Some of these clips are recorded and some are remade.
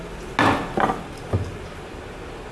recorded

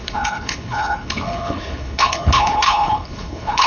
remade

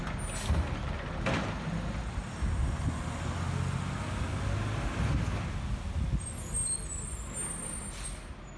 recorded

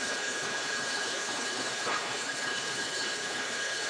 remade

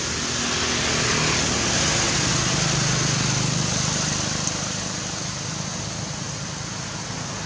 recorded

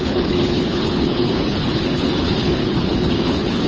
remade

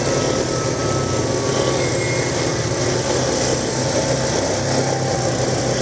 recorded